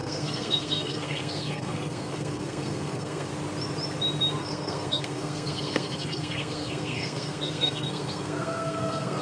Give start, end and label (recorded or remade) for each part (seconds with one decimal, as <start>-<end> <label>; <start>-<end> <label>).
0.0-3.3 remade; 3.3-4.4 recorded; 4.4-9.2 remade